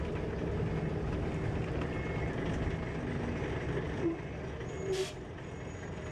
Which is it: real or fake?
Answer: real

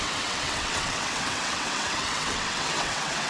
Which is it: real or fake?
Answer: fake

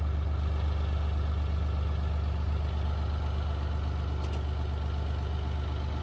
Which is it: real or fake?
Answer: real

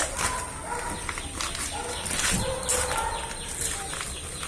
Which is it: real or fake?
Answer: real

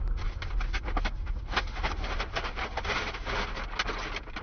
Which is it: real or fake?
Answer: real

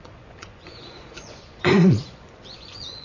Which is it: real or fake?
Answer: fake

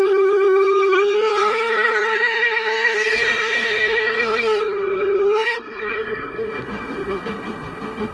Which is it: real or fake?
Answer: fake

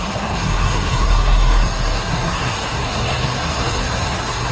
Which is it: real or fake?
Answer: fake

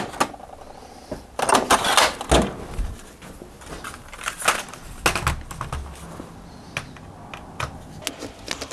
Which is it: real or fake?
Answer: real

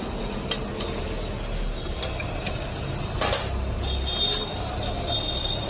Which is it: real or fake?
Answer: real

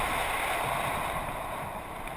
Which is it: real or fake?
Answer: real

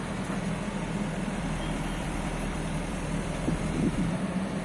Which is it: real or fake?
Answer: fake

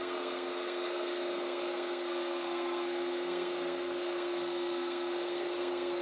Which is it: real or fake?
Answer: fake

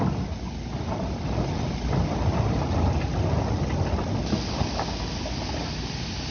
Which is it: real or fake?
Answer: real